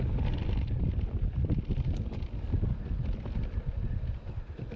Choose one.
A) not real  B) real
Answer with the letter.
B